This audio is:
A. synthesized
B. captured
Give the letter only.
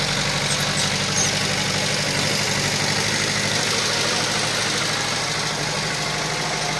B